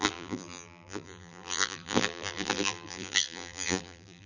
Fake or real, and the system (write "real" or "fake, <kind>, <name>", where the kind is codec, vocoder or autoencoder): fake, vocoder, BigVGAN v2